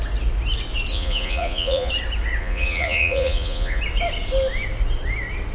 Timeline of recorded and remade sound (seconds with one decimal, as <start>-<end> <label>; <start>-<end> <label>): 0.0-0.9 recorded; 0.9-1.9 remade; 1.9-2.4 recorded; 2.4-3.8 remade; 3.8-5.5 recorded